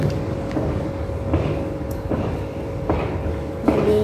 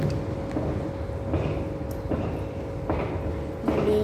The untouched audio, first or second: second